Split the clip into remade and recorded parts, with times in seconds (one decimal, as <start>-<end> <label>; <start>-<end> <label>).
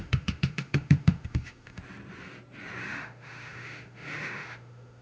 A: 0.0-1.8 remade; 1.8-2.8 recorded; 2.8-5.0 remade